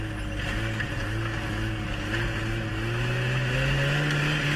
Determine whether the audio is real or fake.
real